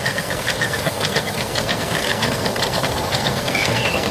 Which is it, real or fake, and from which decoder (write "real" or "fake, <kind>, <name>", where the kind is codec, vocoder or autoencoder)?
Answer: fake, codec, SNAC